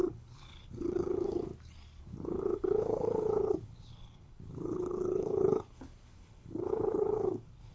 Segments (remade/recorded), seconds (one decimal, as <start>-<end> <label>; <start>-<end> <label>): 0.0-1.5 remade; 1.5-2.0 recorded; 2.0-7.7 remade